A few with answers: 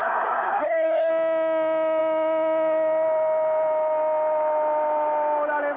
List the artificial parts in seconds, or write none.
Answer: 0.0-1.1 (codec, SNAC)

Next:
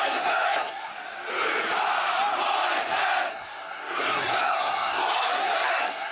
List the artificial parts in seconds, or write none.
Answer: 0.0-0.9 (codec, SNAC); 3.3-6.1

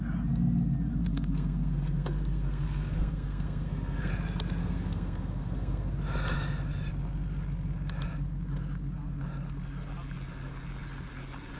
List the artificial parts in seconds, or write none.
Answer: 1.0-4.1 (codec, SNAC); 4.6-5.9

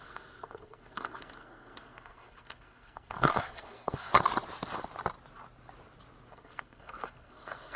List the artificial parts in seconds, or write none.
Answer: 0.0-4.1 (codec, SNAC); 6.3-7.8